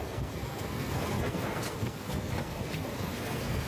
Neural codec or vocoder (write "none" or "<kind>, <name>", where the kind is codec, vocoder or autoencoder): codec, SNAC